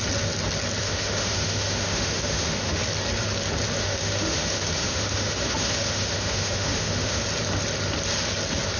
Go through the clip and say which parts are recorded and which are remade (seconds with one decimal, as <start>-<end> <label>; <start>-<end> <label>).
0.0-0.8 recorded; 0.8-2.8 remade; 2.8-3.8 recorded; 3.8-7.2 remade; 7.2-8.8 recorded